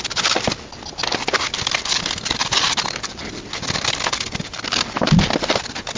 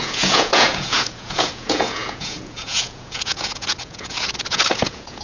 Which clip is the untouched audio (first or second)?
first